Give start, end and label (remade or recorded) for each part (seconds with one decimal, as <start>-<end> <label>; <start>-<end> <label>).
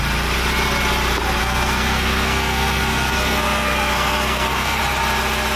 0.0-1.4 recorded; 1.4-4.8 remade; 4.8-5.6 recorded